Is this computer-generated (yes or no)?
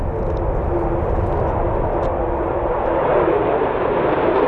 no